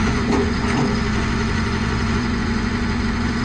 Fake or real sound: fake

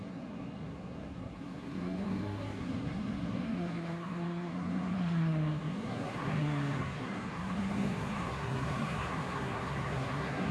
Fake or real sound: fake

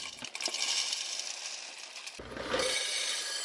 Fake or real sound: real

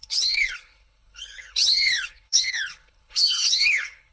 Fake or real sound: fake